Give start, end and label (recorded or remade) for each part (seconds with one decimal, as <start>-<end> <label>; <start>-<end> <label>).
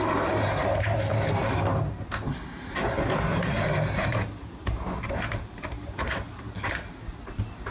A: 0.0-3.3 recorded; 3.3-6.3 remade; 6.3-7.7 recorded